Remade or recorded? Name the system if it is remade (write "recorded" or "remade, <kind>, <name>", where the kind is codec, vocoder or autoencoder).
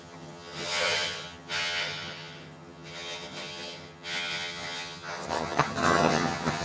remade, vocoder, HiFi-GAN